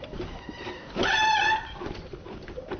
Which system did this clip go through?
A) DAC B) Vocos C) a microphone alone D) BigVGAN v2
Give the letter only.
C